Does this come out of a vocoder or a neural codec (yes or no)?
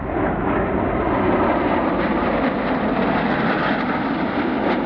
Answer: no